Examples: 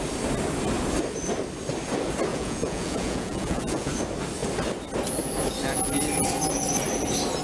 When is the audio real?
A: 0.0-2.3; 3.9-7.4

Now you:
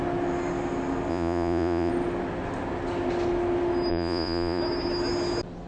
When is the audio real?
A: 0.0-1.1; 1.9-3.9; 4.6-5.7

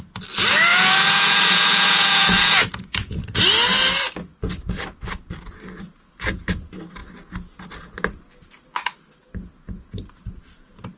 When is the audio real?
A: 0.0-0.7; 3.2-11.0

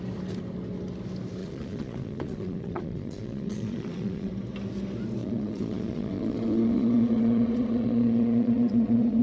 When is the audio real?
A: 0.0-1.4; 4.3-5.2

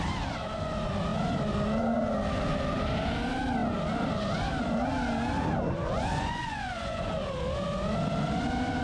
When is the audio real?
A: 0.0-6.1; 7.1-8.8

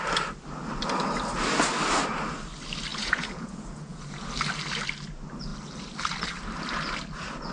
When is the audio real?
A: 0.0-2.9; 4.3-7.5

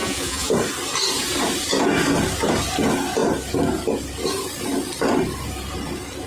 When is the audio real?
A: 0.5-6.3